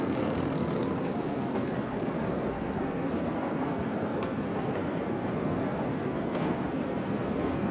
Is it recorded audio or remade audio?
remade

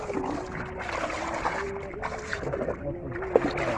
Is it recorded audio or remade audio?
recorded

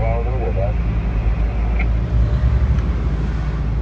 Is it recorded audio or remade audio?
recorded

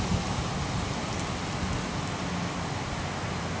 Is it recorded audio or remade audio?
recorded